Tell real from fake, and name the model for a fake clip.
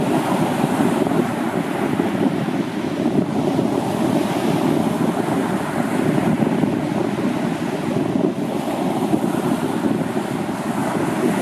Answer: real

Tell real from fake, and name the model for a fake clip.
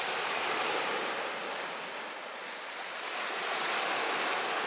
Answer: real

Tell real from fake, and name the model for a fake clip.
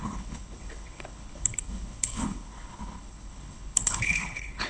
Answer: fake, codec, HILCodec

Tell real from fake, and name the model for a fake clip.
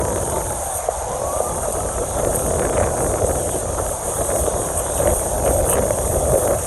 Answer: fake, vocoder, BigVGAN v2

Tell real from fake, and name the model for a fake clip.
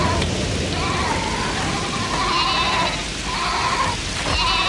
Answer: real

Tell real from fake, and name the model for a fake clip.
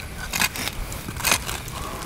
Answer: real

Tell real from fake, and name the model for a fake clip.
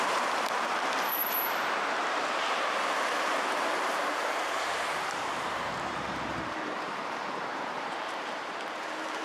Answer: fake, vocoder, BigVGAN v2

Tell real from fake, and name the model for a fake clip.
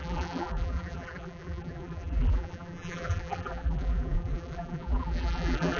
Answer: fake, vocoder, BigVGAN v2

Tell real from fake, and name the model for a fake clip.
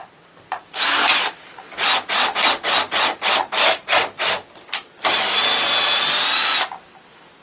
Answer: real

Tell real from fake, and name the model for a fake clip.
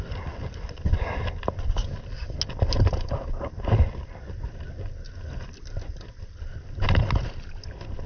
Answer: real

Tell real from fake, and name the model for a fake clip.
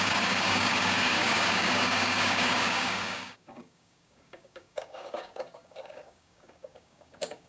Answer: fake, codec, DAC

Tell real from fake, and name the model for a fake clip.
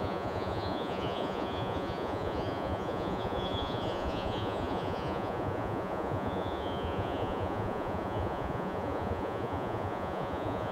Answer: fake, vocoder, Vocos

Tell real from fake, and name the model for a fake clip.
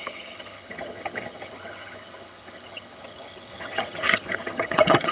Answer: fake, vocoder, HiFi-GAN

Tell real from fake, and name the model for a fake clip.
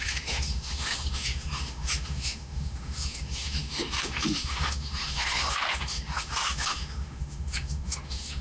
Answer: fake, autoencoder, DAC-VAE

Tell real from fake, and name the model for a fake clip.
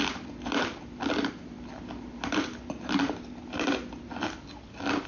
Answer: real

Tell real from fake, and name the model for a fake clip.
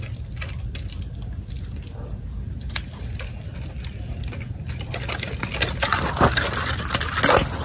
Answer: real